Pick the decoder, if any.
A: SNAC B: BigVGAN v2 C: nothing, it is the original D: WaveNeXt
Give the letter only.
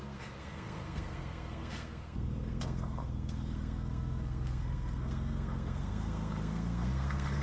A